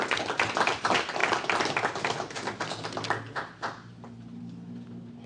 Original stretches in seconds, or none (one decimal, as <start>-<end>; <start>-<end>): 0.0-5.3